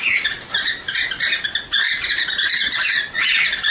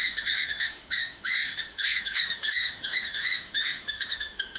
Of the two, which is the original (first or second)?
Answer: first